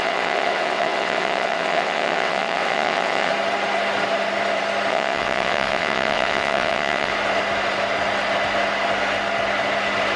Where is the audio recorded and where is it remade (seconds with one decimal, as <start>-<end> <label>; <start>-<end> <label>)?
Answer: 0.0-3.3 remade; 3.3-4.9 recorded; 4.9-7.1 remade; 7.1-10.2 recorded